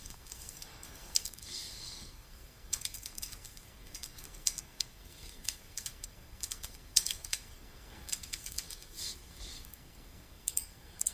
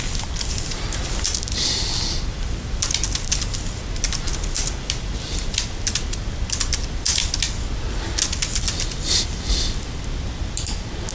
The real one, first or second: second